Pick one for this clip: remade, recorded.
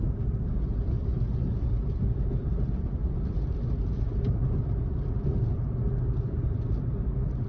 recorded